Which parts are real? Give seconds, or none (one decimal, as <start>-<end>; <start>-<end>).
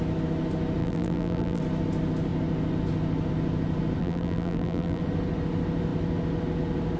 0.0-0.8; 1.6-4.0; 5.0-7.0